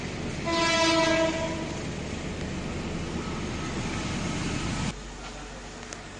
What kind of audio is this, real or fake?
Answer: real